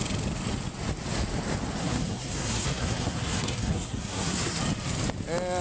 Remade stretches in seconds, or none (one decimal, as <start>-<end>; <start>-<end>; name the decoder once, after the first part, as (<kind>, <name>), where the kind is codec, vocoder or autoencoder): 1.8-4.6 (codec, SNAC)